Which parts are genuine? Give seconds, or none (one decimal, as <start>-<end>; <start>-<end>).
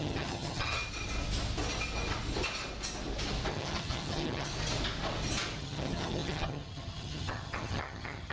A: 0.8-3.5; 4.5-5.6